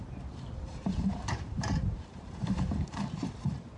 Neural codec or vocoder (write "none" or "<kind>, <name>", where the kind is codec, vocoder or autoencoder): vocoder, BigVGAN v2